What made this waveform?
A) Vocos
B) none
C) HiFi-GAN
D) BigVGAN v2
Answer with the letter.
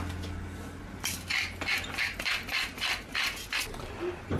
B